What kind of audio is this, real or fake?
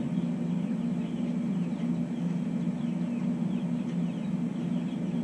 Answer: real